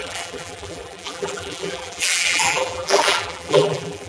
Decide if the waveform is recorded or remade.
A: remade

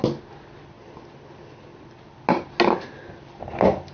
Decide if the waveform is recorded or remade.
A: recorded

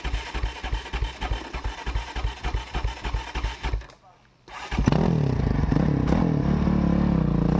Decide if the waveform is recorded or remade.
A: recorded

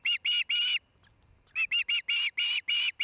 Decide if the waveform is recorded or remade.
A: recorded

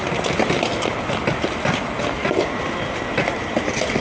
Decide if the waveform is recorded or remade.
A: recorded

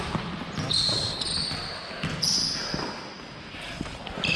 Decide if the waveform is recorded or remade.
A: recorded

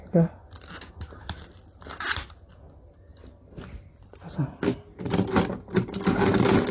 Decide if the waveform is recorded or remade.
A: recorded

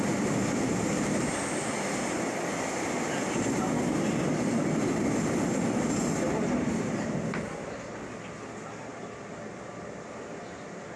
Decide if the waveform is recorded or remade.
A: recorded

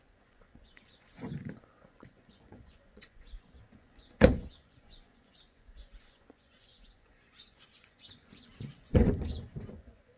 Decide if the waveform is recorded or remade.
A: remade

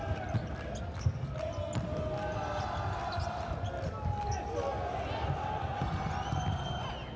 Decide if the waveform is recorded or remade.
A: recorded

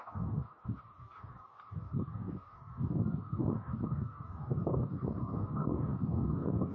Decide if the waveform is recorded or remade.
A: remade